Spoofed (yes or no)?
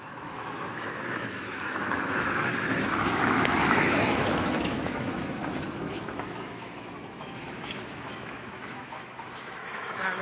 yes